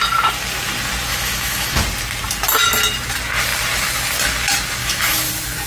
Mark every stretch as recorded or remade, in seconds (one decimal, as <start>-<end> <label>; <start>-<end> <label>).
0.0-1.1 recorded; 1.1-1.8 remade; 1.8-4.8 recorded; 4.8-5.3 remade; 5.3-5.7 recorded